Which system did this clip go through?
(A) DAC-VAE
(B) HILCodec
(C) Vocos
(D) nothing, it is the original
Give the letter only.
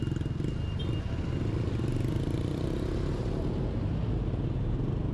D